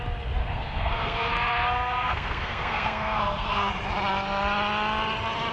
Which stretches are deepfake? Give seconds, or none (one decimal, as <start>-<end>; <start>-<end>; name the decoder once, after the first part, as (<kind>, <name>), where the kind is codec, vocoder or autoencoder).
0.4-3.7 (codec, SNAC)